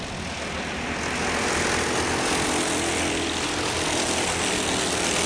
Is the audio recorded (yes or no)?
yes